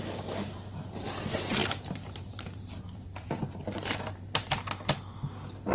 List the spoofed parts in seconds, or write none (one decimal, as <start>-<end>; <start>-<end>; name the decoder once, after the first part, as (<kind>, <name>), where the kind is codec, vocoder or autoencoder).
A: 1.6-5.0 (vocoder, BigVGAN v2)